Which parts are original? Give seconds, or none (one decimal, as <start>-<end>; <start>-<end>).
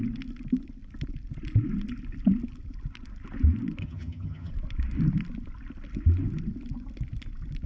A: 0.0-3.8; 4.5-7.7